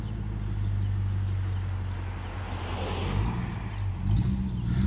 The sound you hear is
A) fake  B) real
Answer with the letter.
B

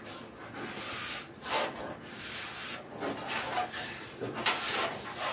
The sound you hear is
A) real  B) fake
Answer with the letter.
A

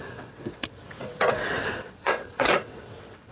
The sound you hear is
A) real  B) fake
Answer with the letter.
B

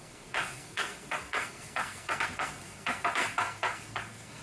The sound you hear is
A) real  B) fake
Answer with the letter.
B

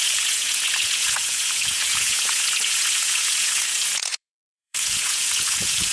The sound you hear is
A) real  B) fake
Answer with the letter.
B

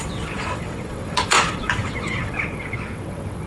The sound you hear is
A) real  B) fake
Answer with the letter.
B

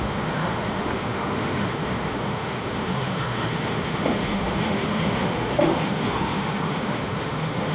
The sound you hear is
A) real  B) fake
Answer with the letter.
B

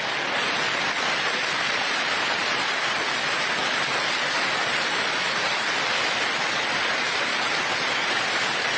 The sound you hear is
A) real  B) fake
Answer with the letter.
A